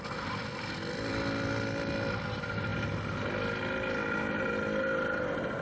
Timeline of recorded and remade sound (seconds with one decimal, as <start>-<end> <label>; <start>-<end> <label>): 0.0-5.6 recorded